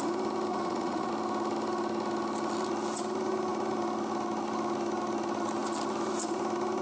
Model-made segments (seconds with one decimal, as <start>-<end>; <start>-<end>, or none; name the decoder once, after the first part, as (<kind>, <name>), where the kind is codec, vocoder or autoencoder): 0.5-1.1 (vocoder, Vocos)

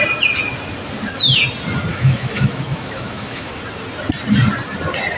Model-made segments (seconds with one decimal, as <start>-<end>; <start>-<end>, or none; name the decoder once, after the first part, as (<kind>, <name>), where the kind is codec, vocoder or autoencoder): 1.9-3.5 (autoencoder, DAC-VAE)

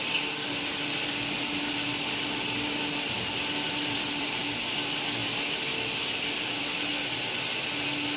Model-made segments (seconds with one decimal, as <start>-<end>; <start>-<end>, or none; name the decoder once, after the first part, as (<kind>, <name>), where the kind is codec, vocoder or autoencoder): 1.9-4.4 (vocoder, BigVGAN v2); 5.2-6.6

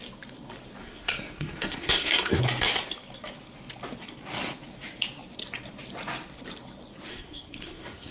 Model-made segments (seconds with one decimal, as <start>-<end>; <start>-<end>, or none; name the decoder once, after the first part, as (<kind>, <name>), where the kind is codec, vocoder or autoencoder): 0.8-2.4 (codec, SNAC); 7.1-8.1

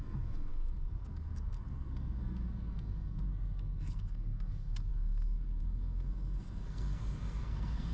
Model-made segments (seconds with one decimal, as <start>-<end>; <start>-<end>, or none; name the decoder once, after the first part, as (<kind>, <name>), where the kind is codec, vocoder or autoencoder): 0.0-7.9 (codec, SNAC)